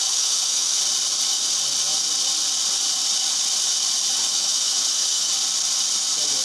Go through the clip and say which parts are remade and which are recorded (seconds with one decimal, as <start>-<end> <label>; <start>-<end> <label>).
0.0-0.8 remade; 0.8-4.3 recorded; 4.3-5.3 remade; 5.3-6.4 recorded